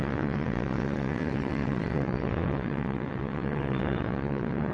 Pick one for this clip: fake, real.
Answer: fake